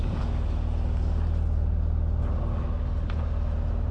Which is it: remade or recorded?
recorded